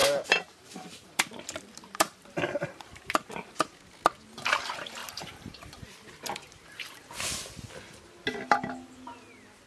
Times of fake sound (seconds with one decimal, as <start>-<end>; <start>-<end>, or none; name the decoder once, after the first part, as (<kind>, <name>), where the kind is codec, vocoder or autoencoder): 0.0-3.6 (vocoder, BigVGAN v2); 5.0-6.5